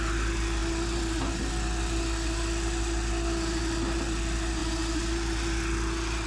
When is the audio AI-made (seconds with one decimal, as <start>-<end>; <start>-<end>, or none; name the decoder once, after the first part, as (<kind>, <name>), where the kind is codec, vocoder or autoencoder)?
none